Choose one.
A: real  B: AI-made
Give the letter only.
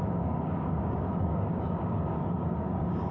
B